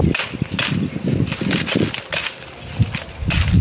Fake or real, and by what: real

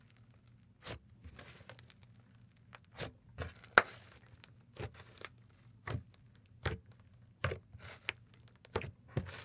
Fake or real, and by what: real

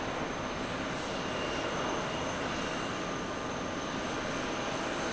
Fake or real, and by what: real